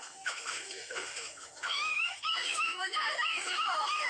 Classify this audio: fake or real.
fake